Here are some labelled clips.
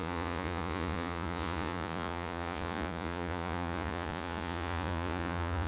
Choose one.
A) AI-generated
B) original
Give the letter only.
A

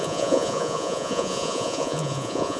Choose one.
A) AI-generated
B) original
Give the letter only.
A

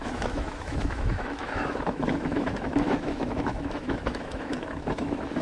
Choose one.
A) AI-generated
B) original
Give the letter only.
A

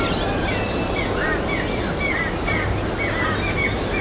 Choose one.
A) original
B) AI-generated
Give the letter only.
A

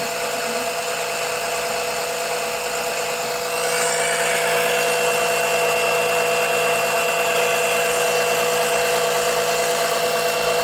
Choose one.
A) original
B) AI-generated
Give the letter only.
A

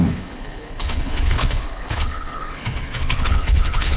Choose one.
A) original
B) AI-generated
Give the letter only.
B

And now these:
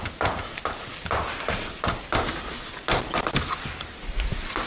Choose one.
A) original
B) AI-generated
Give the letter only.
A